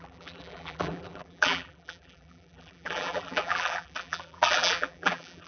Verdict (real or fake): fake